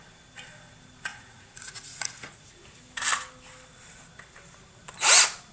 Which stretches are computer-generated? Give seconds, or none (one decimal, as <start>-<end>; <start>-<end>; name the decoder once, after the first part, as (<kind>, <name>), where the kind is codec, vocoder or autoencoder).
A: 1.1-2.5 (vocoder, Vocos)